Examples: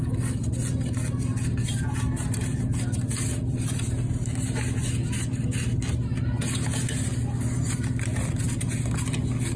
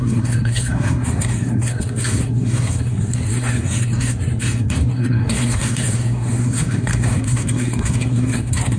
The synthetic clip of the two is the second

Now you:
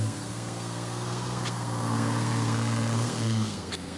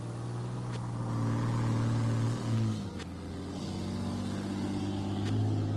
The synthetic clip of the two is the first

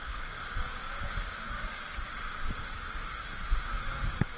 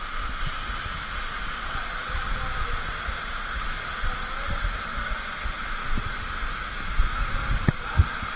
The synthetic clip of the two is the first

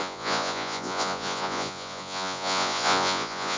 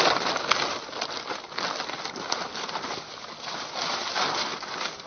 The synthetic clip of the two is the first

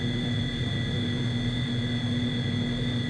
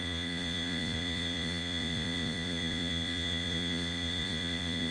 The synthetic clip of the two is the second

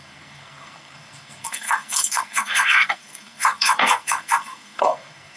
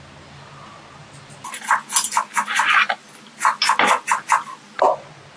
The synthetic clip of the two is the first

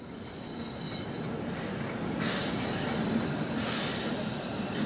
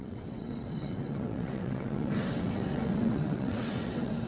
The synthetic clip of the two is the second